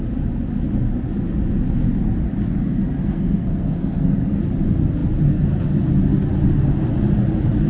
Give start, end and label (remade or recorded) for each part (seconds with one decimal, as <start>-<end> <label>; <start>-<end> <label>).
0.0-3.0 recorded; 3.0-4.4 remade; 4.4-7.7 recorded